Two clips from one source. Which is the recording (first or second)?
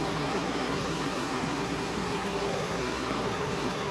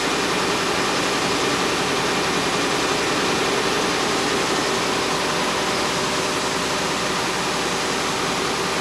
second